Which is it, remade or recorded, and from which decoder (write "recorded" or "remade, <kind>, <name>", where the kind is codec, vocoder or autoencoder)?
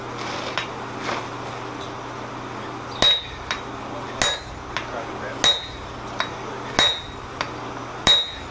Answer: recorded